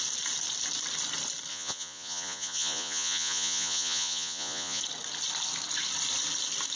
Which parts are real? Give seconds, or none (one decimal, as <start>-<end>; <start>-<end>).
0.0-1.5; 4.8-6.8